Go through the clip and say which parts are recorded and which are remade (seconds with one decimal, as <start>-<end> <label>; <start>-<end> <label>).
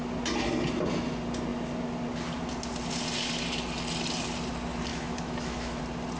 0.0-4.9 recorded; 4.9-5.8 remade; 5.8-6.2 recorded